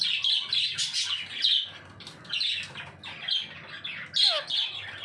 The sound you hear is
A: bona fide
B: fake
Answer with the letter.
A